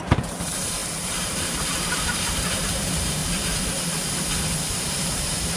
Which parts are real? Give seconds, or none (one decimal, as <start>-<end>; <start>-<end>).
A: 3.2-4.7